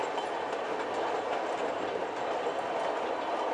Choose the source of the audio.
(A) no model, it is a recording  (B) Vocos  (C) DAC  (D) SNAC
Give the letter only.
A